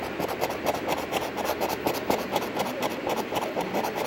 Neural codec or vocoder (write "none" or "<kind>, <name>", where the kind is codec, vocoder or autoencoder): none